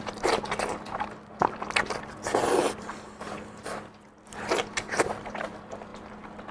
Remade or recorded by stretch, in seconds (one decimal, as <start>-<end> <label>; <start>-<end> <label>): 0.0-6.5 recorded

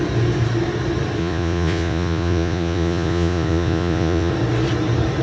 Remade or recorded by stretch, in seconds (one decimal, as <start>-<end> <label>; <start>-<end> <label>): 0.0-1.2 recorded; 1.2-4.3 remade; 4.3-5.2 recorded

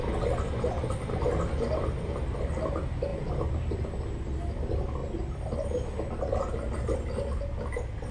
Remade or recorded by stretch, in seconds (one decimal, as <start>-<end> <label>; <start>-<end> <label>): 0.0-8.1 recorded

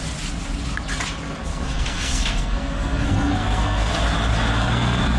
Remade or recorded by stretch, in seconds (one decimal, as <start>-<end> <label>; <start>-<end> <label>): 0.0-1.5 recorded; 1.5-3.9 remade; 3.9-4.6 recorded; 4.6-5.2 remade

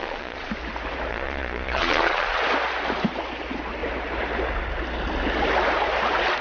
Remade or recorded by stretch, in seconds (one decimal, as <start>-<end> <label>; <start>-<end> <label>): 0.0-0.5 remade; 0.5-1.1 recorded; 1.1-2.4 remade; 2.4-6.4 recorded